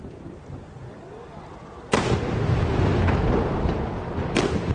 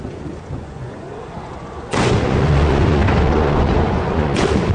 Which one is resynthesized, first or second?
second